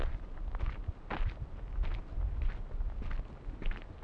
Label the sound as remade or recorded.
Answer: recorded